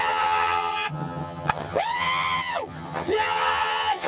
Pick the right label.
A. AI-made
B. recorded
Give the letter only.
A